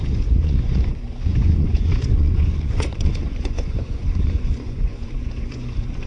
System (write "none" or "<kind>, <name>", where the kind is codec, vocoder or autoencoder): vocoder, Vocos